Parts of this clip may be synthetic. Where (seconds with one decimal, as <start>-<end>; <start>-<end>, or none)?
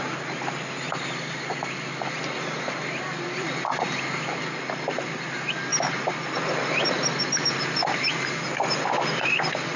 none